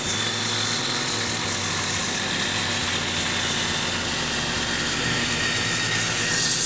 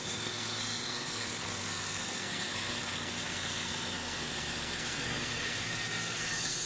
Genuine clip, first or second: first